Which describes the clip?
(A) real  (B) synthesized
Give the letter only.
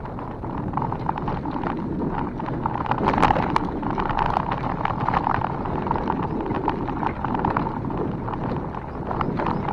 A